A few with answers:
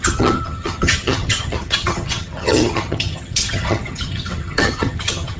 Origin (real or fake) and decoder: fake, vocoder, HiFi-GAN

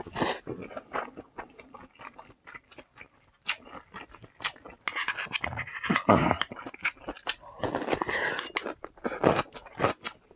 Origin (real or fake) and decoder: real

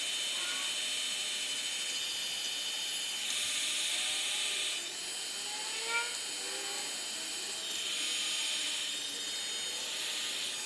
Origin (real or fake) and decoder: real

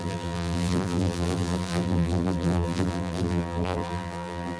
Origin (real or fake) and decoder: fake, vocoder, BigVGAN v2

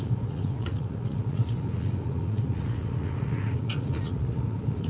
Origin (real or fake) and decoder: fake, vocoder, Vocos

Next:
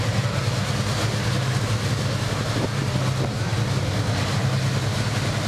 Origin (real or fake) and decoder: real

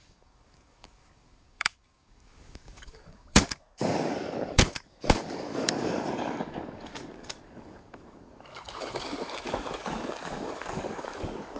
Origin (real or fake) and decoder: fake, codec, DAC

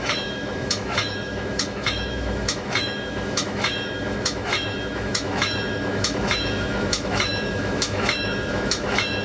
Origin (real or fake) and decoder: fake, autoencoder, DAC-VAE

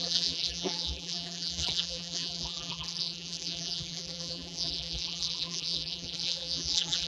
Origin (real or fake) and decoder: fake, vocoder, BigVGAN v2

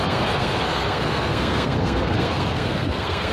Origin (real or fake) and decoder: fake, codec, SNAC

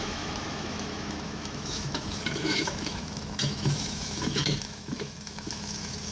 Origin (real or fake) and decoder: fake, autoencoder, DAC-VAE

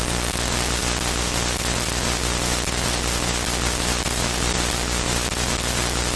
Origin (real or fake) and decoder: real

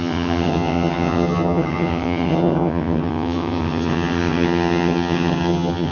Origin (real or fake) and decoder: fake, vocoder, HiFi-GAN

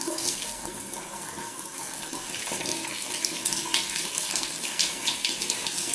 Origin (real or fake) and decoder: fake, codec, SNAC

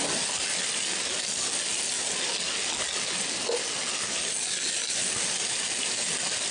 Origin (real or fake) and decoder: real